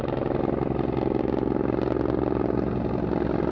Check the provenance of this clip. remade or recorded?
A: recorded